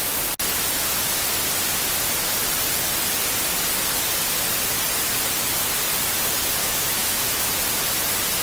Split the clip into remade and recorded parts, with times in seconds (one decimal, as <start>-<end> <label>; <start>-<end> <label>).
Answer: 0.0-6.6 recorded; 6.6-7.5 remade; 7.5-8.4 recorded